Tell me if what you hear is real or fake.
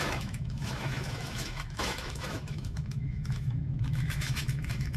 fake